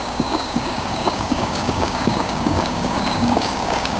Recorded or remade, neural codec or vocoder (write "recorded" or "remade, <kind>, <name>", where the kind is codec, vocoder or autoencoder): remade, codec, DAC